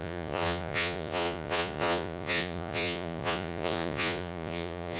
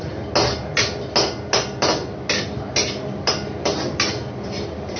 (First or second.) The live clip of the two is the second